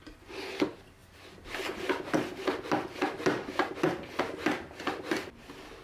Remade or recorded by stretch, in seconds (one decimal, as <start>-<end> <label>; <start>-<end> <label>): 0.0-1.0 recorded; 1.0-2.4 remade; 2.4-5.8 recorded